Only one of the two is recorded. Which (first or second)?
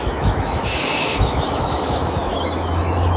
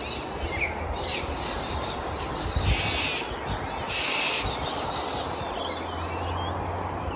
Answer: second